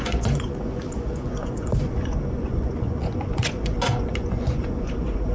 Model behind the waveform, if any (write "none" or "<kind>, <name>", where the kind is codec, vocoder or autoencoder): vocoder, Vocos